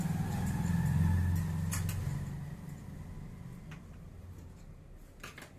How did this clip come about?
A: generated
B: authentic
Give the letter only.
B